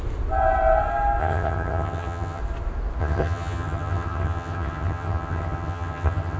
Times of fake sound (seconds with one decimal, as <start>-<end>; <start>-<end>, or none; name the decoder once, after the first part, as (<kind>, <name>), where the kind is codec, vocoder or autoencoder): 1.2-2.4 (vocoder, HiFi-GAN); 3.0-6.4